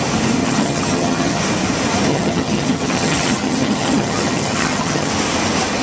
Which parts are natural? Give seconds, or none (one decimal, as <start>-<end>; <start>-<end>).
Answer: 0.0-0.4; 1.4-2.1; 5.1-5.8